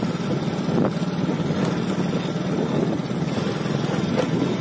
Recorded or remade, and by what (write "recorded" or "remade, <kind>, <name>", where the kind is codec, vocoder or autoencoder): recorded